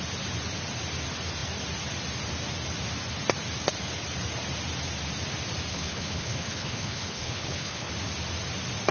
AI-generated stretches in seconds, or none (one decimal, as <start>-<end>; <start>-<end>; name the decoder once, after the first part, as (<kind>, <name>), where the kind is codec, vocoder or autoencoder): 5.7-7.9 (codec, HILCodec)